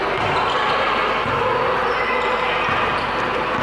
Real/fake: real